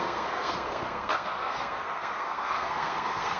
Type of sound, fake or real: fake